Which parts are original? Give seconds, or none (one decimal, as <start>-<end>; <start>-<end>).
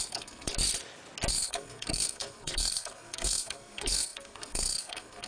0.5-1.3